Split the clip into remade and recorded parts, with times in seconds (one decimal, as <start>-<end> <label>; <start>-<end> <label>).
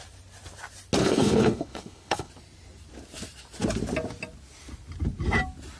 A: 0.0-1.0 recorded; 1.0-2.3 remade; 2.3-5.8 recorded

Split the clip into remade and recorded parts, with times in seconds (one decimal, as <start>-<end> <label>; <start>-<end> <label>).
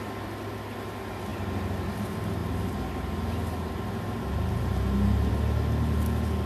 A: 0.0-6.5 recorded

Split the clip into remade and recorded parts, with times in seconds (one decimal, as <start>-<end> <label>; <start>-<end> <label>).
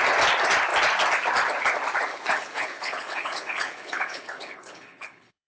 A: 0.0-2.1 recorded; 2.1-5.5 remade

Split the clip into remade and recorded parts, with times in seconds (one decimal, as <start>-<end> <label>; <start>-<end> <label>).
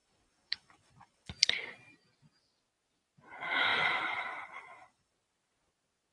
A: 0.0-1.3 remade; 1.3-3.7 recorded; 3.7-5.1 remade; 5.1-6.1 recorded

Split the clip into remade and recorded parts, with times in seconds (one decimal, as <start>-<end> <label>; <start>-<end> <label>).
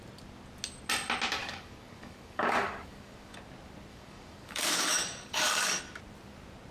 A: 0.0-1.4 recorded; 1.4-3.4 remade; 3.4-3.9 recorded; 3.9-5.8 remade; 5.8-6.7 recorded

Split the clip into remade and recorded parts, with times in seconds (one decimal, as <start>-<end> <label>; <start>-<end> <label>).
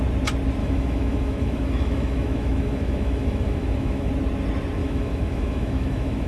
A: 0.0-0.6 recorded; 0.6-4.1 remade; 4.1-4.8 recorded; 4.8-6.3 remade